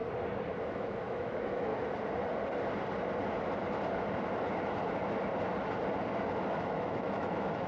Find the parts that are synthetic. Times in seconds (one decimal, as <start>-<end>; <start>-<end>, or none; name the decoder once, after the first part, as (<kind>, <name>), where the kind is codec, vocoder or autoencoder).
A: 0.6-1.7 (autoencoder, DAC-VAE); 6.2-7.7

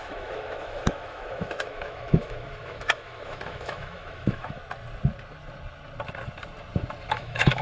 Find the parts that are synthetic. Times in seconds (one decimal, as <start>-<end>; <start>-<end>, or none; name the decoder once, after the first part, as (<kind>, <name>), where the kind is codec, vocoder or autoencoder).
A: 0.0-4.6 (autoencoder, DAC-VAE); 7.1-7.6

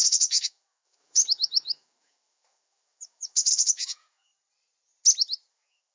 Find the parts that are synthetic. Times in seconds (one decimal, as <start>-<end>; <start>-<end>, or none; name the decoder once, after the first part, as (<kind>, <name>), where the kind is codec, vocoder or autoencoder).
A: 0.0-4.3 (autoencoder, DAC-VAE); 5.5-5.9

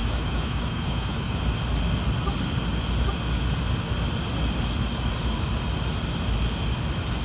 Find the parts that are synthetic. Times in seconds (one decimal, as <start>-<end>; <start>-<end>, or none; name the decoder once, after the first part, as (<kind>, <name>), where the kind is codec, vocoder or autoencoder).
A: 0.0-1.4 (autoencoder, DAC-VAE)

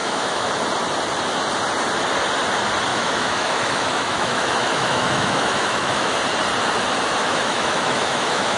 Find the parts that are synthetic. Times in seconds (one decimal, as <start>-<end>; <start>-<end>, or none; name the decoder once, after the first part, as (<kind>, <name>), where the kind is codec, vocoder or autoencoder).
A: 0.0-0.5 (autoencoder, DAC-VAE); 2.9-6.1; 7.2-8.6

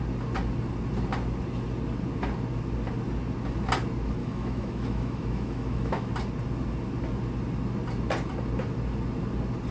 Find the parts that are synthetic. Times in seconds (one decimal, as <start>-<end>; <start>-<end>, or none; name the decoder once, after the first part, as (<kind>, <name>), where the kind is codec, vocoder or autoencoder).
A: 4.2-6.1 (autoencoder, DAC-VAE)

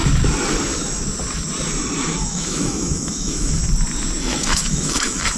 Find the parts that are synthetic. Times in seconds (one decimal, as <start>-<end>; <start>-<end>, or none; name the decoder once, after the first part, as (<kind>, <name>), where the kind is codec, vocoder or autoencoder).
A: 2.0-3.6 (autoencoder, DAC-VAE); 4.2-5.4